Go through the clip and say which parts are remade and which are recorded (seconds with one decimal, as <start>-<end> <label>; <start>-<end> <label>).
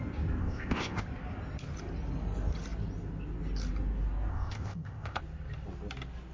0.0-0.4 recorded; 0.4-1.0 remade; 1.0-4.3 recorded; 4.3-5.2 remade; 5.2-6.3 recorded